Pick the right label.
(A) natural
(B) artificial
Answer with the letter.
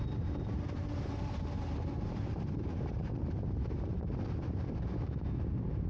B